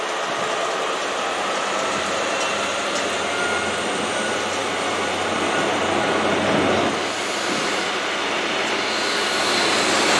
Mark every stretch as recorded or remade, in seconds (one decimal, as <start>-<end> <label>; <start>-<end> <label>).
0.0-10.2 recorded